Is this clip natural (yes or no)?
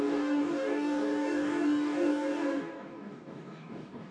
no